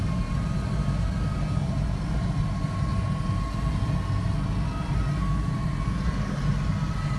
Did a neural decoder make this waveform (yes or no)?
no